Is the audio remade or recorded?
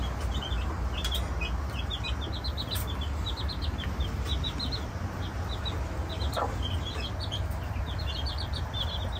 recorded